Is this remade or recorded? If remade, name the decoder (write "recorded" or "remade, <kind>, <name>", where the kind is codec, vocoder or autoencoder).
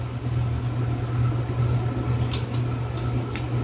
recorded